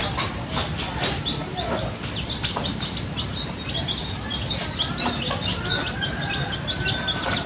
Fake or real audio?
real